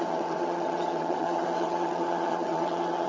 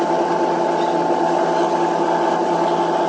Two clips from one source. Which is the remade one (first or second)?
first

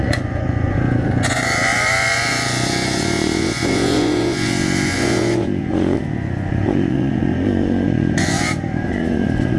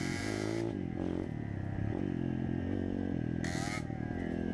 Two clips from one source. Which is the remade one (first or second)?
first